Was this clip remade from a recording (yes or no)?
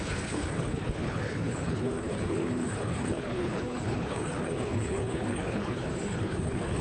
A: yes